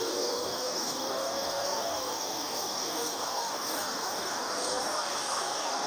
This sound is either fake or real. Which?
fake